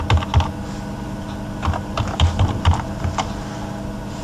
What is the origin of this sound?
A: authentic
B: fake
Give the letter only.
A